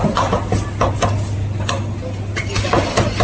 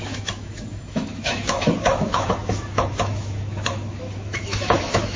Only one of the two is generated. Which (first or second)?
second